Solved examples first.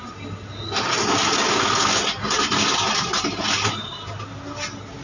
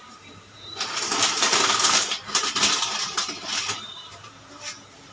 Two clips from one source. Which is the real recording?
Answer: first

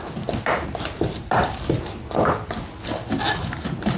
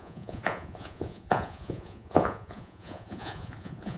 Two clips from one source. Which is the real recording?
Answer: first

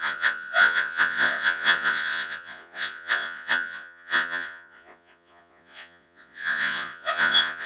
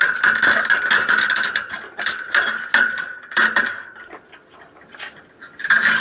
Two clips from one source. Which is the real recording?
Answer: second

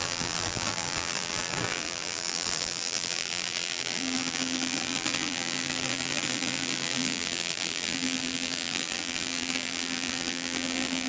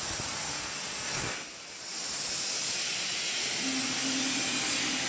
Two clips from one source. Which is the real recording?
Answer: second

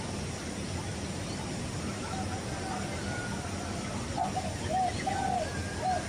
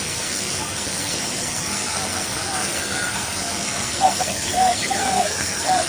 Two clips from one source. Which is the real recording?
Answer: first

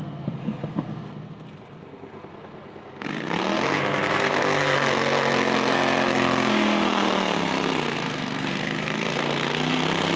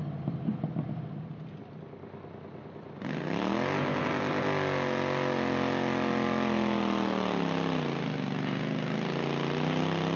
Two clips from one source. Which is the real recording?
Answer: second